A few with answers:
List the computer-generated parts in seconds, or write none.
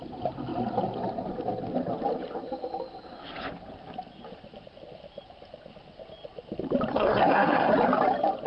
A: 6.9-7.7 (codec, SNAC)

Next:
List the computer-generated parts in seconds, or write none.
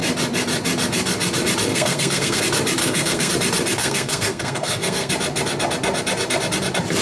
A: 1.7-2.4 (codec, SNAC); 2.8-3.3; 3.8-5.1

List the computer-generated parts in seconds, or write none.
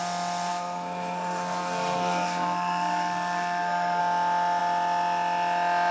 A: 0.5-4.0 (codec, SNAC)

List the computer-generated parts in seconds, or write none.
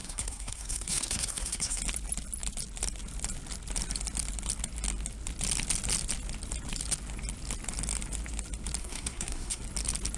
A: 0.0-1.8 (codec, SNAC); 8.8-9.6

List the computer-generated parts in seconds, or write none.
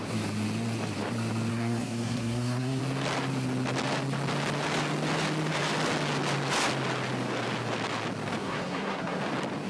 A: 1.5-2.8 (codec, SNAC); 8.4-9.2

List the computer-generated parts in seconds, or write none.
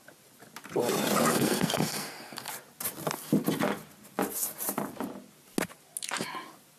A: 1.3-2.5 (codec, SNAC)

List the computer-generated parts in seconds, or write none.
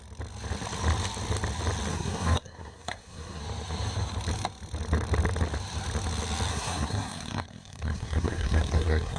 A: 1.9-3.4 (codec, SNAC); 6.5-9.2